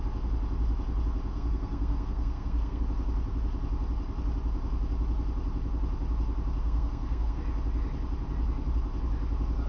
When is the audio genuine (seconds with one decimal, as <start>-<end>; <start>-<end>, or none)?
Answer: 0.0-1.3; 2.8-6.6; 7.4-9.7